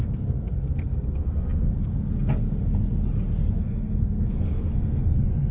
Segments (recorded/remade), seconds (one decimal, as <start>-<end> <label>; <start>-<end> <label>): 0.0-2.7 remade; 2.7-3.5 recorded; 3.5-5.5 remade

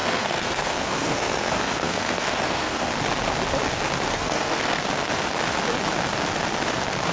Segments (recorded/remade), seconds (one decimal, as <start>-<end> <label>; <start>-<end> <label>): 0.0-2.9 remade; 2.9-4.1 recorded; 4.1-4.8 remade; 4.8-7.1 recorded

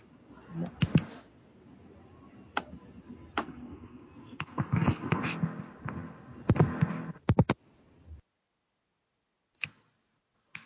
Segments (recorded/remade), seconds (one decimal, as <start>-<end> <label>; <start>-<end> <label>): 0.0-3.4 recorded; 3.4-5.2 remade; 5.2-10.7 recorded